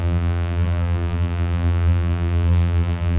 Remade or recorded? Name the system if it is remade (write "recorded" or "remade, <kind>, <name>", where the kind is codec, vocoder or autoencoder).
remade, vocoder, BigVGAN v2